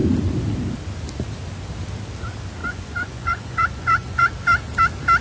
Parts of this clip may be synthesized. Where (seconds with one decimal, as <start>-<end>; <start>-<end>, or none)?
2.6-4.3